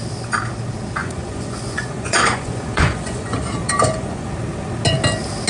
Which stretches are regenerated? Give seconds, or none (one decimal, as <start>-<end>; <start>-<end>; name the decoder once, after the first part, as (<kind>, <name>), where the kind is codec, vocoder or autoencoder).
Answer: 1.0-4.3 (vocoder, Vocos)